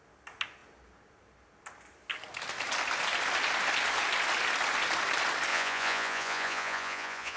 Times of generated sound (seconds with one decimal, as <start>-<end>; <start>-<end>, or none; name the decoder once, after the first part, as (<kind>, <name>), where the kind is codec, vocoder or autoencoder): 5.5-7.4 (vocoder, Vocos)